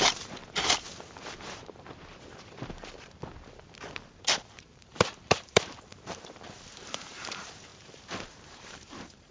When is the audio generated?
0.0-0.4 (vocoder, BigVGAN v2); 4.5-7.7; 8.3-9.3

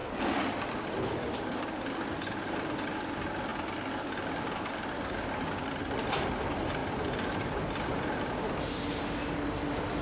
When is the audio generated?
0.0-0.8 (vocoder, BigVGAN v2); 6.8-8.1

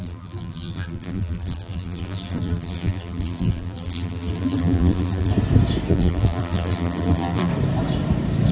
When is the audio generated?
0.0-5.3 (vocoder, BigVGAN v2); 5.9-7.5

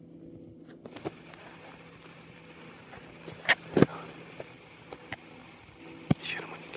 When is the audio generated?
none